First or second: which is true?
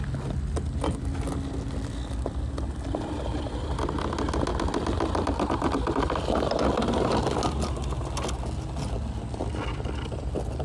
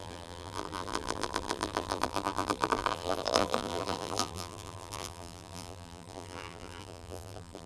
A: first